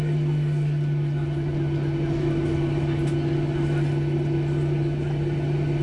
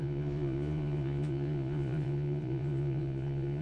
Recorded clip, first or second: first